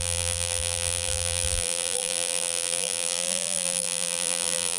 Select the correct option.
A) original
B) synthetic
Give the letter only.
B